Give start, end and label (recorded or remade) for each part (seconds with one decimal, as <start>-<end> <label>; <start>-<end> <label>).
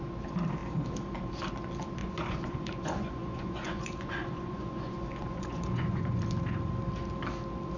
0.0-2.0 recorded; 2.0-6.2 remade; 6.2-7.8 recorded